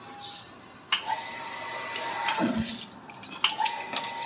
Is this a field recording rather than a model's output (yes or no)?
yes